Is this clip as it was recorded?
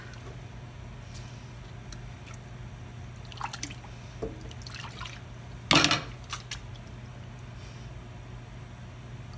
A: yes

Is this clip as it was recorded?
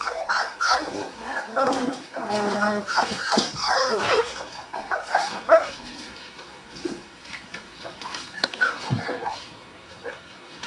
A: no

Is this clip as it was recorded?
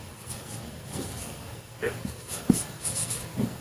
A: no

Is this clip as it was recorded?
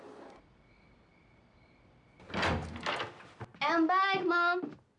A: yes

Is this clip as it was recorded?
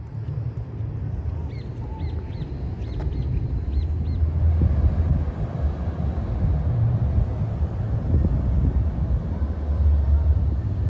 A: yes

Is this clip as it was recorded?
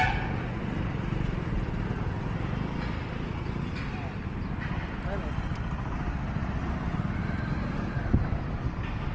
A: yes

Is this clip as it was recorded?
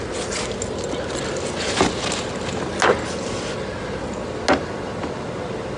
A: yes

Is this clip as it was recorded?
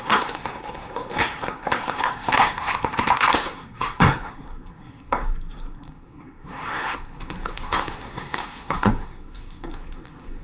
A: no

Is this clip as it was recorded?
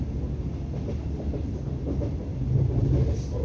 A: yes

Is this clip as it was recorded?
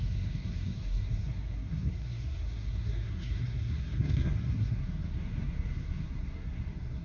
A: no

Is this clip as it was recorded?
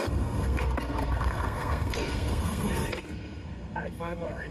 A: no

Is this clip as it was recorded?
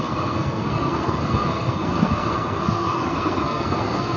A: no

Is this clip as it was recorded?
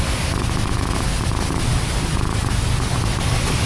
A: yes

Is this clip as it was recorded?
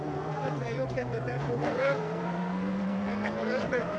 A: no